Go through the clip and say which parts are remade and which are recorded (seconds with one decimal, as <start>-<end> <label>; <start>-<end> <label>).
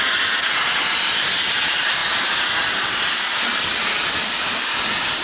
0.0-5.2 recorded